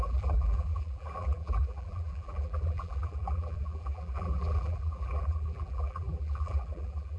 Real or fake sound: fake